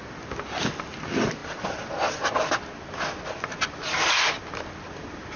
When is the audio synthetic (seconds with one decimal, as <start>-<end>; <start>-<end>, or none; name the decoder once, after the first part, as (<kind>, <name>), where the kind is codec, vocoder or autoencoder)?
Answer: none